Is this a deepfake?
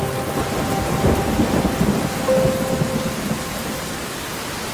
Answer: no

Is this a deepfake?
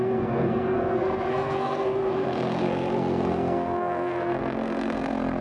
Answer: yes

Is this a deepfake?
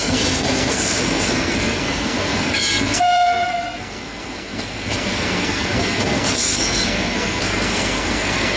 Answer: yes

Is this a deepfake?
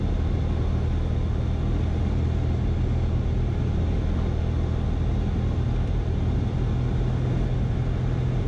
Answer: no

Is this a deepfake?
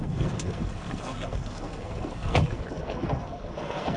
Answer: yes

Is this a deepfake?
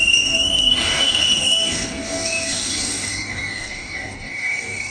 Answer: yes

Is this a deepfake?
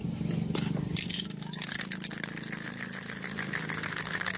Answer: no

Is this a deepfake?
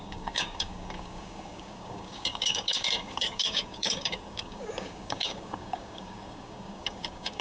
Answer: yes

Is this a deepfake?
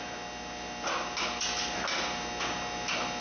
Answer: no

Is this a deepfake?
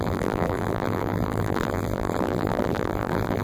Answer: yes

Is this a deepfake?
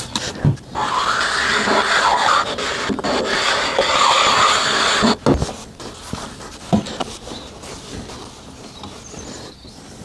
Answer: no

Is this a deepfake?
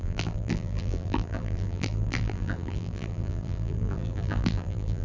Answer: yes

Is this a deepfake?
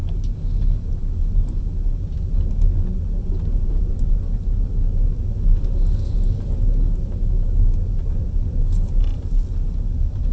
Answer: no